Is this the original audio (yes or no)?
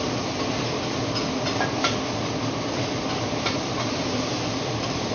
no